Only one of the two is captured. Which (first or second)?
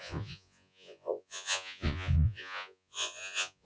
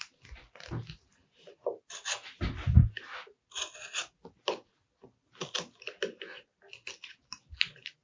second